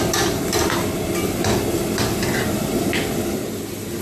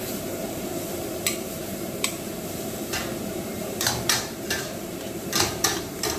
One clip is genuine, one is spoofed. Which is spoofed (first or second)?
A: second